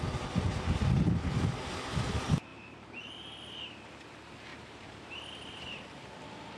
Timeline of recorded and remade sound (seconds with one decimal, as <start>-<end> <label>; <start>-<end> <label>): 0.0-2.5 recorded; 2.5-3.1 remade; 3.1-4.5 recorded; 4.5-5.1 remade; 5.1-6.6 recorded

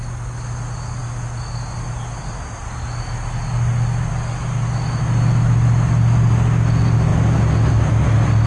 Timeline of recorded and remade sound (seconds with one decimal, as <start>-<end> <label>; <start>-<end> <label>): 0.0-8.5 recorded

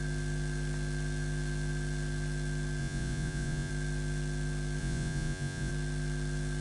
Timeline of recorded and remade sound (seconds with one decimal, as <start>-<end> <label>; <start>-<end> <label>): 0.0-2.8 recorded; 2.8-3.7 remade; 3.7-4.8 recorded; 4.8-5.7 remade; 5.7-6.6 recorded

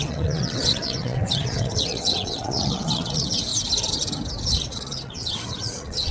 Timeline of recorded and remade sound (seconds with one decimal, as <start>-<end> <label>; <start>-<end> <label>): 0.0-3.5 remade; 3.5-4.5 recorded; 4.5-6.1 remade

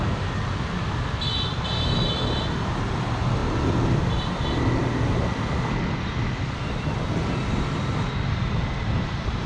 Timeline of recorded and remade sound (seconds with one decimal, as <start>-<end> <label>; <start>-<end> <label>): 0.0-9.5 recorded

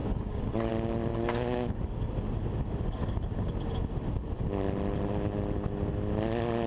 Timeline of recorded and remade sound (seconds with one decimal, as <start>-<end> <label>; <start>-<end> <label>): 0.0-0.7 remade; 0.7-1.1 recorded; 1.1-1.8 remade; 1.8-6.7 recorded

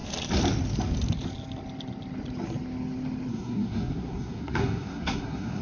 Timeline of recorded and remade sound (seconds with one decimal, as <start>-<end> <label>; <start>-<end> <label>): 0.0-3.3 recorded; 3.3-5.6 remade

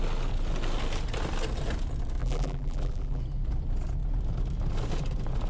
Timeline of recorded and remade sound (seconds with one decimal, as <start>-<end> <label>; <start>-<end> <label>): 0.0-2.2 recorded; 2.2-3.2 remade; 3.2-5.5 recorded